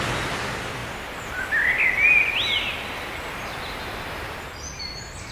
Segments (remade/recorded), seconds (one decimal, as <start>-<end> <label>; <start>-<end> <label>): 0.0-5.3 recorded